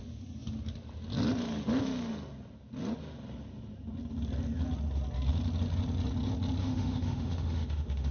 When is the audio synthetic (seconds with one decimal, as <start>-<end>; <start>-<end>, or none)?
6.6-8.1